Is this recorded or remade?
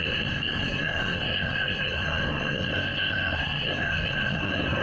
remade